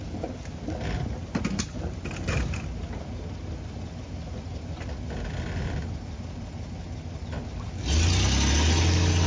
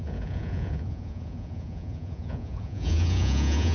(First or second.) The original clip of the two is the first